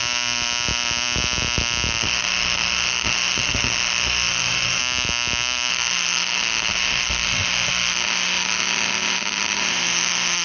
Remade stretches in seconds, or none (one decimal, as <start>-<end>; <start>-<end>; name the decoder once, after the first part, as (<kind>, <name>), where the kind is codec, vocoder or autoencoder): 2.0-4.8 (autoencoder, DAC-VAE); 5.7-10.4